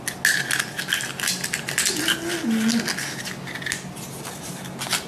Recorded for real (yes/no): yes